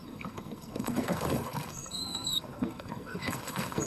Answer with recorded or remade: remade